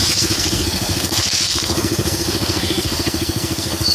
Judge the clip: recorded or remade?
remade